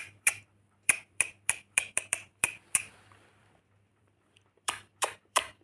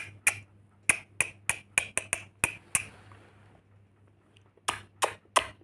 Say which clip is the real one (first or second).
second